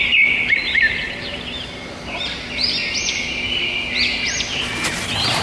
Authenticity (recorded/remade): recorded